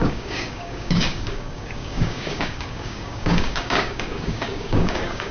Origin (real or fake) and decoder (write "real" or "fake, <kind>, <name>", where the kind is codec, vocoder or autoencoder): fake, codec, DAC